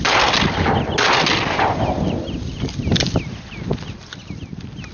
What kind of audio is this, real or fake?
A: real